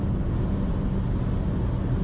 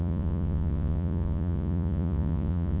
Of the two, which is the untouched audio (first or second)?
first